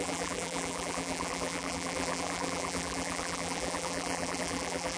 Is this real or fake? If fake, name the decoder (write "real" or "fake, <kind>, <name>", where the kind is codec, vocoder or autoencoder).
fake, vocoder, BigVGAN v2